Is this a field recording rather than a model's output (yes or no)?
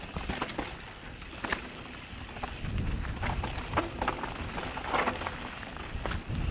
yes